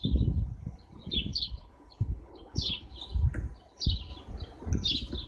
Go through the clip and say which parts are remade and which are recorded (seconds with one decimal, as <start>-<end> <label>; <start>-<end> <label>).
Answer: 0.0-1.3 recorded; 1.3-3.1 remade; 3.1-5.3 recorded